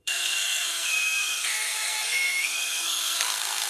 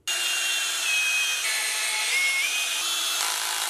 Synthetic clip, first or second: first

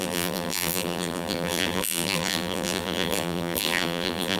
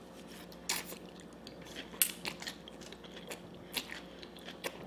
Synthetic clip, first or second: first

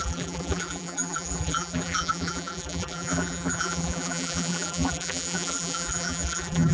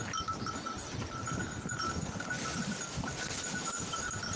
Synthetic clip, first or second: first